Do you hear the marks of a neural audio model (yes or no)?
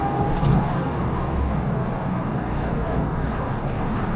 yes